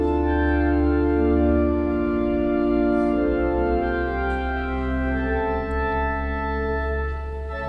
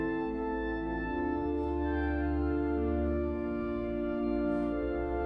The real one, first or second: first